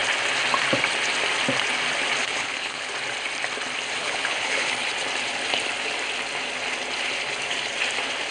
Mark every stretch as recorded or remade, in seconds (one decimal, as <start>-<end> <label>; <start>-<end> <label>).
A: 0.0-2.2 recorded; 2.2-2.9 remade; 2.9-4.0 recorded; 4.0-4.7 remade; 4.7-8.3 recorded